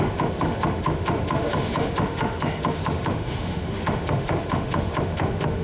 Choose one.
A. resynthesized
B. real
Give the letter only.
A